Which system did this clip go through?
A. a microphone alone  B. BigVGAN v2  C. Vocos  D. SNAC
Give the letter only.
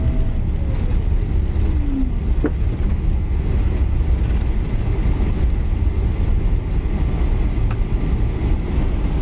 A